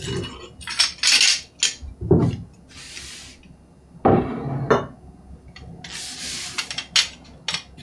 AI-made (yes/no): no